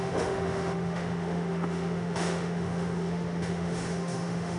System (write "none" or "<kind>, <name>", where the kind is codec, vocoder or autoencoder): autoencoder, DAC-VAE